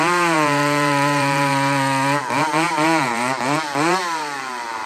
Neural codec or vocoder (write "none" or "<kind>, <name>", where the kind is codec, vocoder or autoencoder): vocoder, BigVGAN v2